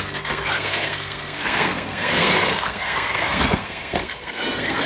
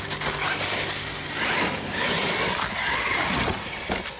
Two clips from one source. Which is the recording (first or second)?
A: second